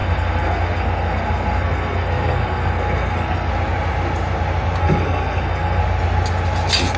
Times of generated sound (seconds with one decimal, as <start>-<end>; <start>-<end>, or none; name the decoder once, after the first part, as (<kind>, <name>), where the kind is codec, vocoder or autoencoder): 0.0-3.5 (codec, SNAC); 4.8-5.8